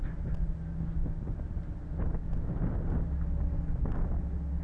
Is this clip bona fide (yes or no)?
yes